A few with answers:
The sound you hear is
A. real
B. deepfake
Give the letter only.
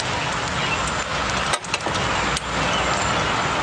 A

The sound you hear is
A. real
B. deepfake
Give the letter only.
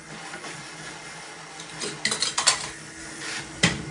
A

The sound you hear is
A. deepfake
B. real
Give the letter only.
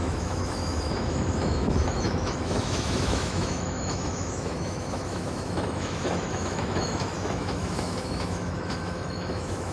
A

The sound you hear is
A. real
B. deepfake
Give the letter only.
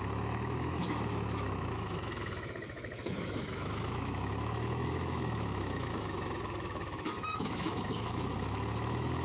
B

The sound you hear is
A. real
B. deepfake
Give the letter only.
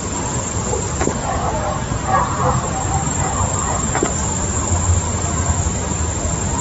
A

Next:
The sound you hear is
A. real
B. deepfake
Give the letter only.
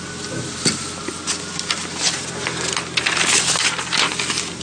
A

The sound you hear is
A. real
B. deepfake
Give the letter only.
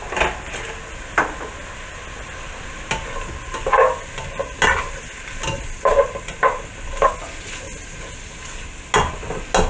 A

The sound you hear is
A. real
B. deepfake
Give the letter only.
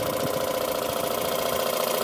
A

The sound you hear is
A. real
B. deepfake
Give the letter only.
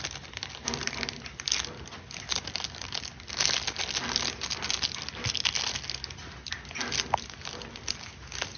A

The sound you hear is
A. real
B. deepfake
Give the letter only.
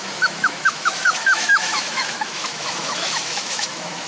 B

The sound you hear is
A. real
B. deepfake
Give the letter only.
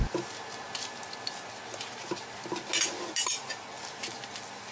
A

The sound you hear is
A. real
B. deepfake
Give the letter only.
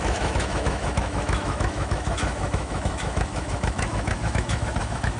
B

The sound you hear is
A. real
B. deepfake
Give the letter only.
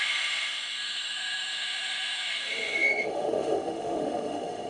B